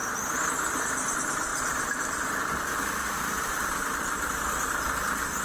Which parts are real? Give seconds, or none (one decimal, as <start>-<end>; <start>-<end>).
0.0-1.5; 4.3-5.4